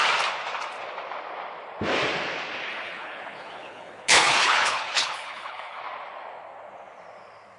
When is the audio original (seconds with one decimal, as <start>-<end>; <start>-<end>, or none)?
0.0-2.7; 5.8-7.6